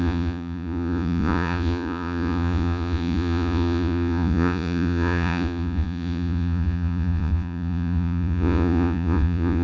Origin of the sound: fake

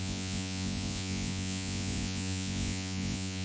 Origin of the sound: fake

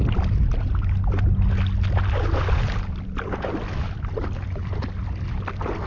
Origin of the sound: real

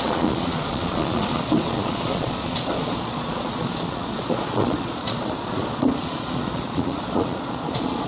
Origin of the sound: fake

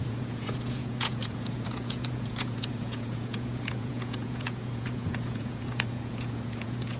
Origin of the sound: fake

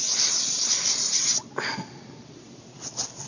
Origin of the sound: real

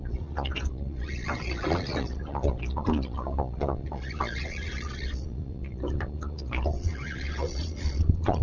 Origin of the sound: fake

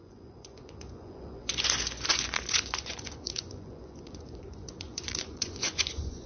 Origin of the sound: fake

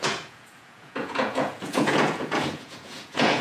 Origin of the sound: fake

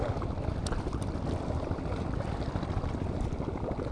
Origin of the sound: real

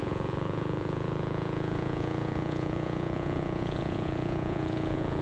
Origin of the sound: fake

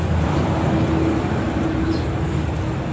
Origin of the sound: real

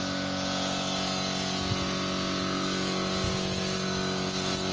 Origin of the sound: fake